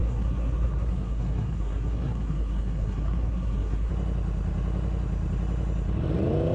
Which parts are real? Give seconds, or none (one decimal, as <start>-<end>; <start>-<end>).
3.9-6.5